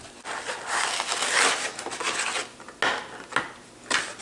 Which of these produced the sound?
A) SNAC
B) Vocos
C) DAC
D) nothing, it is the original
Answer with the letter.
D